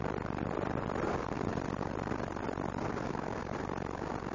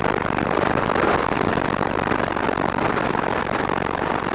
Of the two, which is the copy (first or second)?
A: second